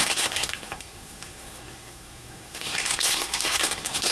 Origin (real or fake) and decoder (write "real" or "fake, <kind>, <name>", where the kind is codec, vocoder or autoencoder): fake, codec, SNAC